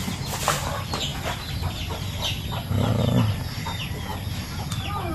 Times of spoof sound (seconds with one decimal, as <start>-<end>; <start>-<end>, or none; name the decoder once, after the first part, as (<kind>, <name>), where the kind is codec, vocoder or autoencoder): none